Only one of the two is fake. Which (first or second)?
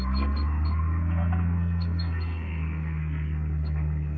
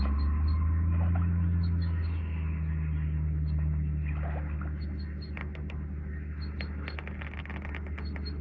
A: first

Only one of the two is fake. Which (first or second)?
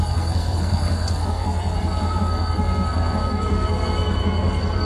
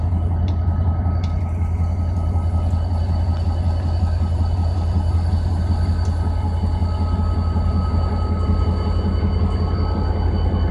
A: first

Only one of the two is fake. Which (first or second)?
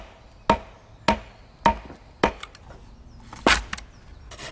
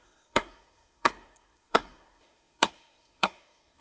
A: second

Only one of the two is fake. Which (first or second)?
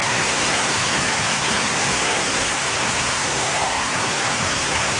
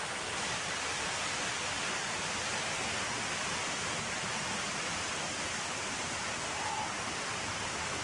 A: first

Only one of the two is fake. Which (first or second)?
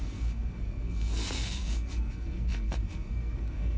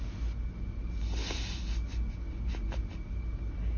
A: first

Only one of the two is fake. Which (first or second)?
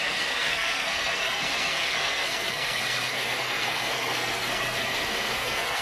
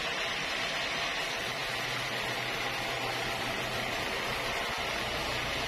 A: first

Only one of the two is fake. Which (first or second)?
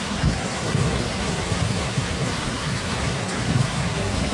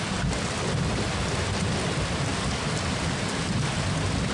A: first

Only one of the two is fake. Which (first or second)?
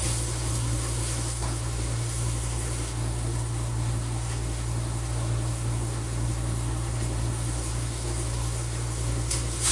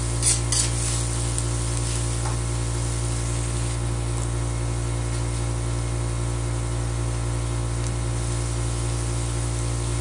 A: first